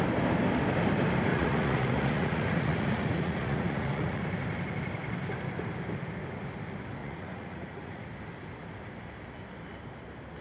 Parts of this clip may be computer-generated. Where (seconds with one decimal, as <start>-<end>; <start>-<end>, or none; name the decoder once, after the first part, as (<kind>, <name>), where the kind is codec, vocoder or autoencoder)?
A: 1.3-4.2 (vocoder, Vocos); 7.0-8.1